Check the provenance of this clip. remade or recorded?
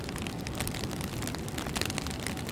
remade